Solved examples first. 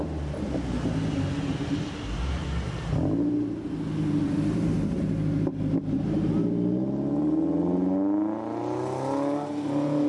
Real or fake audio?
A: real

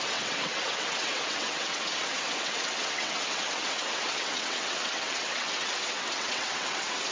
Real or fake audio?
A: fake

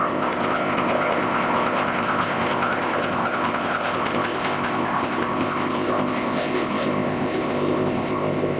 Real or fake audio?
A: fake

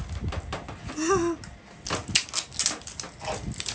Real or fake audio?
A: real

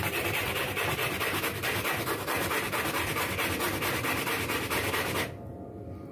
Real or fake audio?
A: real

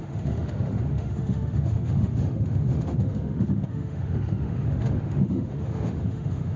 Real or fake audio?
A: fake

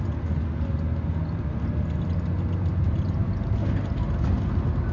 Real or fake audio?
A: real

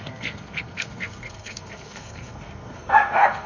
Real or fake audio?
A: fake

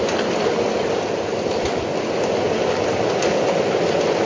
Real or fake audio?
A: real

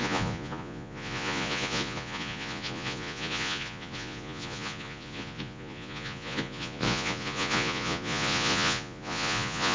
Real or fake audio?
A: fake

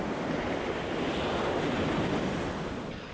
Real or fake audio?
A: real